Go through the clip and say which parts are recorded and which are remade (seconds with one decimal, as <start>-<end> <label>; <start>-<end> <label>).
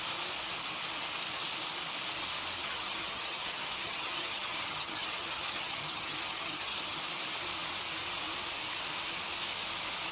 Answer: 0.0-2.6 recorded; 2.6-7.0 remade; 7.0-10.1 recorded